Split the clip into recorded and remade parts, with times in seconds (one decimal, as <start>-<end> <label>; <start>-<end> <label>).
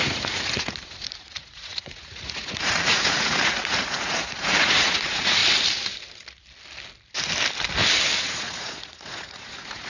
0.0-5.4 remade; 5.4-8.2 recorded; 8.2-9.9 remade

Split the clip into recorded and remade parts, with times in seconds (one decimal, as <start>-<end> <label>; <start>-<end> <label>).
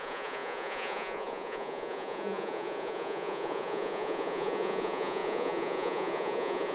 0.0-6.7 remade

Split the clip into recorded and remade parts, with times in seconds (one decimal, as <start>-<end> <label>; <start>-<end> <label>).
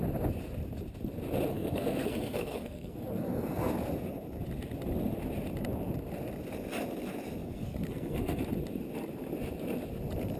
0.0-1.5 recorded; 1.5-3.7 remade; 3.7-7.4 recorded; 7.4-8.4 remade; 8.4-10.4 recorded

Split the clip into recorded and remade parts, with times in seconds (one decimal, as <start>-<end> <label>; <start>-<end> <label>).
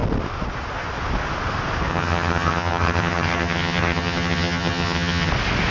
0.0-1.9 recorded; 1.9-5.3 remade; 5.3-5.7 recorded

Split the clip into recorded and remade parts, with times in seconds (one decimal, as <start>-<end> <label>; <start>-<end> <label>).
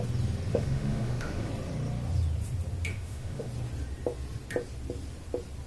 0.0-0.5 recorded; 0.5-1.5 remade; 1.5-2.9 recorded; 2.9-3.5 remade; 3.5-5.7 recorded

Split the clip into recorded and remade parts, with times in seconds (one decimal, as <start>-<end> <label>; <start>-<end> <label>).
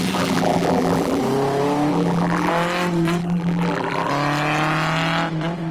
0.0-1.2 remade; 1.2-1.9 recorded; 1.9-2.5 remade; 2.5-3.2 recorded; 3.2-4.1 remade; 4.1-5.7 recorded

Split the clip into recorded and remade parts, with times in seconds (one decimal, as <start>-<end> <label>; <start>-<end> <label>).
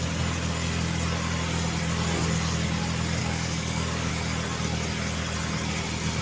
0.0-3.2 recorded; 3.2-4.1 remade; 4.1-6.2 recorded